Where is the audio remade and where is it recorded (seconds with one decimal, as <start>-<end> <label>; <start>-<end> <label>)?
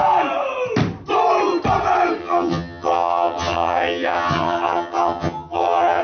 0.0-2.2 recorded; 2.2-6.0 remade